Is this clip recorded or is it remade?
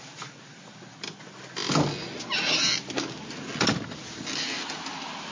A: recorded